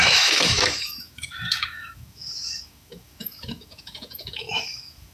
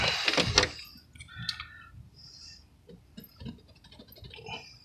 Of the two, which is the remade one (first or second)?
first